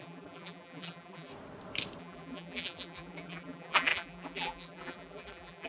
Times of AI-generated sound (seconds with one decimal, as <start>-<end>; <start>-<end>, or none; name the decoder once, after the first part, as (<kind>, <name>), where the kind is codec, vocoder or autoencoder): 0.0-1.3 (vocoder, BigVGAN v2); 2.0-5.7